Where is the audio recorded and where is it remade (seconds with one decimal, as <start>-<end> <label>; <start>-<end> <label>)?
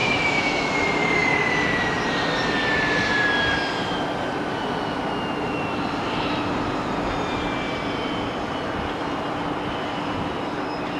0.0-0.7 remade; 0.7-11.0 recorded